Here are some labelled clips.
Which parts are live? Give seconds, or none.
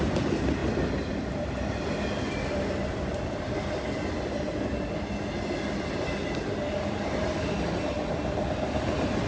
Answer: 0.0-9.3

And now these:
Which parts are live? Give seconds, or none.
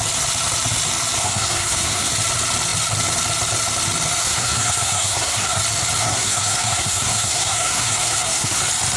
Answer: 0.0-1.2; 2.1-4.2; 5.6-6.0; 8.6-9.0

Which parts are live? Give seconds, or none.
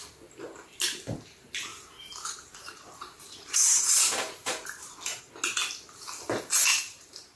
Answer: 0.0-1.7; 5.2-6.7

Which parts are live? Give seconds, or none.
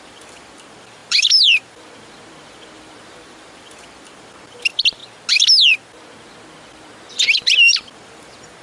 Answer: 5.0-7.1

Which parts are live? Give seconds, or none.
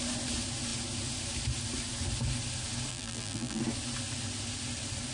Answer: 0.0-2.9; 3.6-5.1